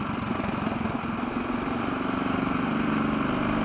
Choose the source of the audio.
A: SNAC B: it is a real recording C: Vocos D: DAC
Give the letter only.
B